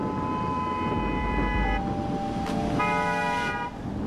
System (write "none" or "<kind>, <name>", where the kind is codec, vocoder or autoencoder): none